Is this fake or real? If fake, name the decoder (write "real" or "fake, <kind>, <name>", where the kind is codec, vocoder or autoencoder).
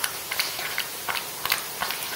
fake, vocoder, BigVGAN v2